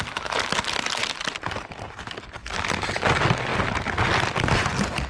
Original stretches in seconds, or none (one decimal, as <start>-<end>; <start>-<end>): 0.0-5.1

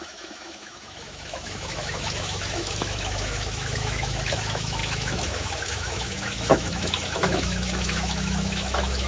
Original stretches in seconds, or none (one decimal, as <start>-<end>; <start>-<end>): none

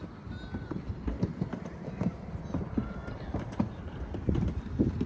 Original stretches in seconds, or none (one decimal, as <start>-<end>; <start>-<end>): none

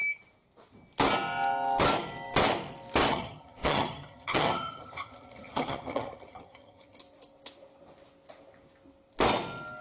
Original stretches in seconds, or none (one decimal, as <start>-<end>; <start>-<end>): 0.0-3.1; 7.0-9.8